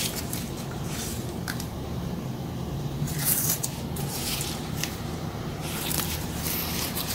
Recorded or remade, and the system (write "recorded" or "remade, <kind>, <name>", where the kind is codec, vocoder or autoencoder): remade, vocoder, BigVGAN v2